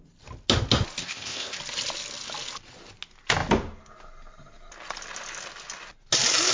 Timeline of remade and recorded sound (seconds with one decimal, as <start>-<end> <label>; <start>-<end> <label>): 0.0-1.0 recorded; 1.0-1.6 remade; 1.6-6.5 recorded

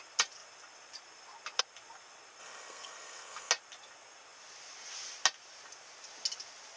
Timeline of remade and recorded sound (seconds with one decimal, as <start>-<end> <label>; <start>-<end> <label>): 0.0-2.4 recorded; 2.4-3.5 remade; 3.5-6.8 recorded

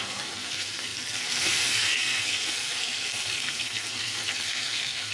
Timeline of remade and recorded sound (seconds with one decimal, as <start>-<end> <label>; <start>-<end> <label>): 0.0-5.1 remade

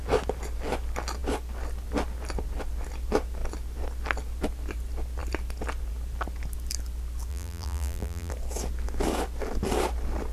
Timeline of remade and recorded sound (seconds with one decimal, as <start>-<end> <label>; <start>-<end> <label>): 0.0-7.3 recorded; 7.3-8.3 remade; 8.3-10.3 recorded

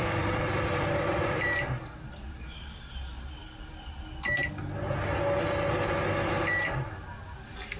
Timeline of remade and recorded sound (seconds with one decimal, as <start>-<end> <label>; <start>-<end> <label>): 0.0-3.0 remade; 3.0-7.8 recorded